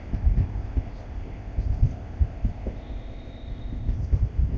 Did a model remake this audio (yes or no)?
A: yes